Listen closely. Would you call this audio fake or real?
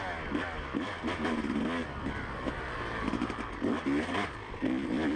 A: real